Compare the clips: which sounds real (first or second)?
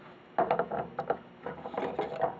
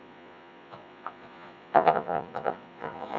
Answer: first